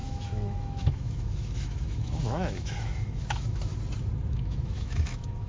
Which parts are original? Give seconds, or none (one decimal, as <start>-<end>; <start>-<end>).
3.7-4.3